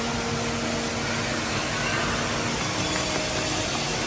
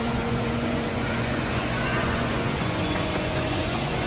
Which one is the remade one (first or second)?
second